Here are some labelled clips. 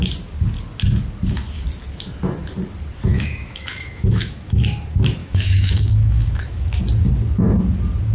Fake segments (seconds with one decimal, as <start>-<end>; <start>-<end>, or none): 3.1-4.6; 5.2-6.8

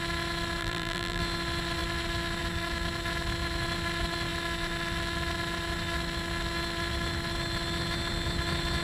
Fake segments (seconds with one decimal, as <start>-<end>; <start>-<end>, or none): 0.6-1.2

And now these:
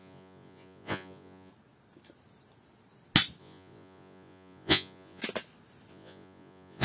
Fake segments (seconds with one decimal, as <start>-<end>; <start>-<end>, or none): 0.0-1.5; 3.4-5.2; 5.9-6.8

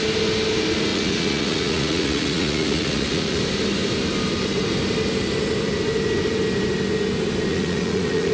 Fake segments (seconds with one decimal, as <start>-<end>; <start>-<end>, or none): 0.9-3.4; 7.5-8.3

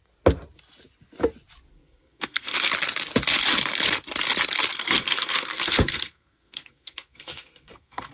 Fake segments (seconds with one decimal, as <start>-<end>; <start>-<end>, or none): 1.7-2.7; 4.7-8.1